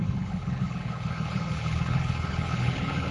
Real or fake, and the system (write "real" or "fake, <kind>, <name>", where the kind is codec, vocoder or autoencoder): fake, codec, HILCodec